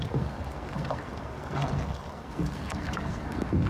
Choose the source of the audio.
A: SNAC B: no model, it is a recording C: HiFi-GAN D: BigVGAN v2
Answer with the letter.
A